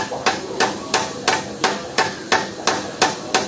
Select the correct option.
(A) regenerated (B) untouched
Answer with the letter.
B